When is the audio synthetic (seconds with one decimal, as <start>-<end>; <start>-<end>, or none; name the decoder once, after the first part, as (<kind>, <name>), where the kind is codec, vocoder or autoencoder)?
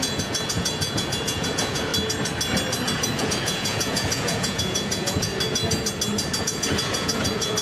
0.0-1.9 (vocoder, Vocos); 3.2-5.3; 6.4-7.6